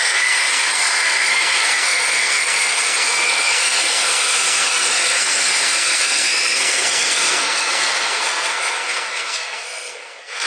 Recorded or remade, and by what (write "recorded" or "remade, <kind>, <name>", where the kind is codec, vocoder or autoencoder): remade, codec, SNAC